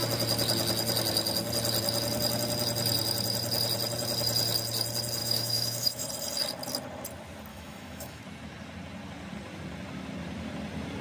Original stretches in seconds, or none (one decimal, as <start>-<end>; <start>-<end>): 0.0-5.2; 6.1-7.5; 8.2-11.0